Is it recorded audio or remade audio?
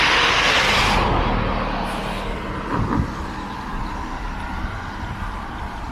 recorded